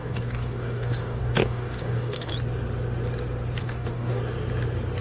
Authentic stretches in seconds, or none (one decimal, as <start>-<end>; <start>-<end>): 2.3-3.6; 4.2-5.0